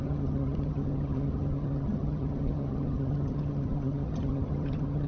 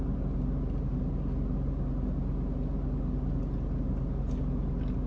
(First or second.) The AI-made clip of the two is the first